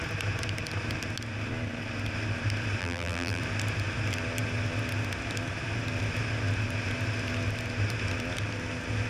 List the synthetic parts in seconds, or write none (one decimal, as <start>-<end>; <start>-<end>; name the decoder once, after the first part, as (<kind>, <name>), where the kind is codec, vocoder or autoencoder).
2.8-3.4 (vocoder, BigVGAN v2)